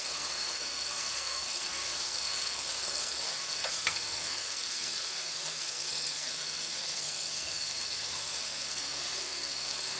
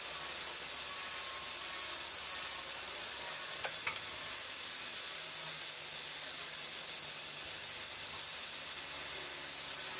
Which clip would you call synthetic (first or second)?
first